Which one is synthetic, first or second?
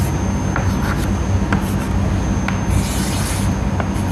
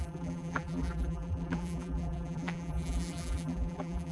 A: second